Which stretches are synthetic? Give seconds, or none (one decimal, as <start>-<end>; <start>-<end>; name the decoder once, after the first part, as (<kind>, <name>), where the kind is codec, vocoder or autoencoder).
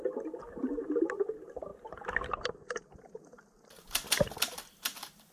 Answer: none